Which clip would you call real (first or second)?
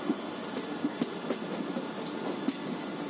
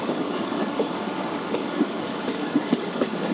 first